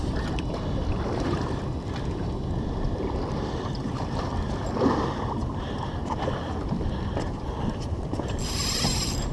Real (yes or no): no